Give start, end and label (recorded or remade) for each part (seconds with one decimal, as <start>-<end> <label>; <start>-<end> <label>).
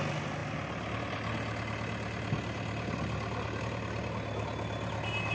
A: 0.0-5.3 recorded